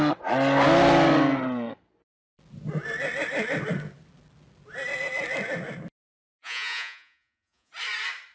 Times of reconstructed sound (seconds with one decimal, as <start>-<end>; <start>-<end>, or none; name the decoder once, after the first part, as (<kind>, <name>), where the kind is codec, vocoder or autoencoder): 6.4-7.7 (vocoder, Vocos)

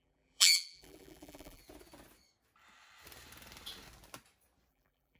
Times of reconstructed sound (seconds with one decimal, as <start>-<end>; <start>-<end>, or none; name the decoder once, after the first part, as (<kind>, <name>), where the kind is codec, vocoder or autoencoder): 0.0-1.6 (vocoder, BigVGAN v2); 4.7-5.2

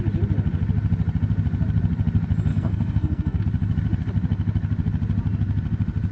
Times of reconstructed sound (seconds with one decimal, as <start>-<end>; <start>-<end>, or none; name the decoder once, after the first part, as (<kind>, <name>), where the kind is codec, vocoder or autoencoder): 2.5-3.4 (codec, SNAC)

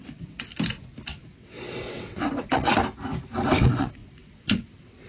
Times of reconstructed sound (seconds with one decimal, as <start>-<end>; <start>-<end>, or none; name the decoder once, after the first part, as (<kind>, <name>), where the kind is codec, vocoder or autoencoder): 0.0-0.5 (vocoder, WaveNeXt); 1.2-2.8; 3.5-5.1

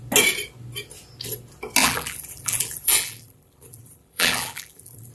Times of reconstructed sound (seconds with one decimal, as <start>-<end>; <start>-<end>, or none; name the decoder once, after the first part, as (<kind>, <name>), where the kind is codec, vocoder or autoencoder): 1.8-5.1 (vocoder, BigVGAN v2)

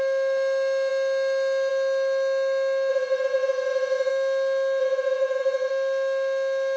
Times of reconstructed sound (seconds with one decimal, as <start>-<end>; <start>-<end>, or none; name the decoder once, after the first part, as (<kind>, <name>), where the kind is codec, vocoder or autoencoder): 2.9-4.1 (vocoder, Vocos); 4.8-5.7